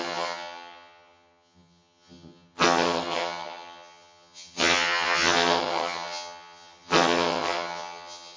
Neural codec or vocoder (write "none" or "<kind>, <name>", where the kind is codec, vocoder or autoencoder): vocoder, HiFi-GAN